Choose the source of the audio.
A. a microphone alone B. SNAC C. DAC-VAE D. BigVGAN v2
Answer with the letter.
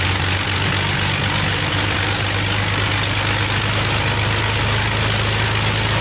A